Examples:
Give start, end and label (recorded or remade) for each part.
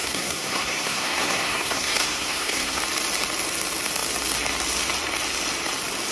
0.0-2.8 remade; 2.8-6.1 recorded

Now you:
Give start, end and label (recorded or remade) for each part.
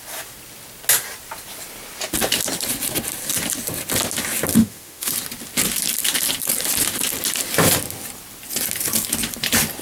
0.0-4.6 recorded; 4.6-5.1 remade; 5.1-9.8 recorded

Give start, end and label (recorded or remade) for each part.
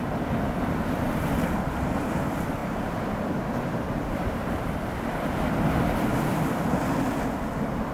0.0-2.6 recorded; 2.6-5.4 remade; 5.4-7.9 recorded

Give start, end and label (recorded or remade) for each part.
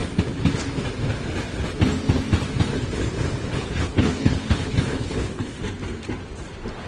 0.0-3.5 recorded; 3.5-5.6 remade; 5.6-6.9 recorded